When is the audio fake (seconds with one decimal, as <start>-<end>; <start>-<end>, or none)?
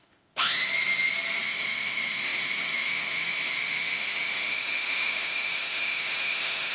0.0-0.6; 1.4-6.7